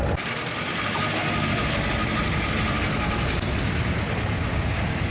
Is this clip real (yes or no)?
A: yes